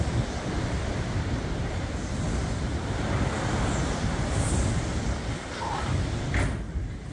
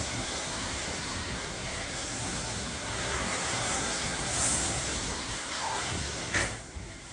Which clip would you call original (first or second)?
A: first